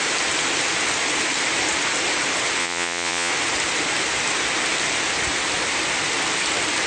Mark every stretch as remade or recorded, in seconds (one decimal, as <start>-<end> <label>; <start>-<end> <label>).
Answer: 0.0-2.6 recorded; 2.6-3.3 remade; 3.3-6.9 recorded